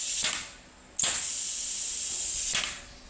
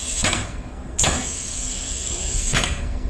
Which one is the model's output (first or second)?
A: second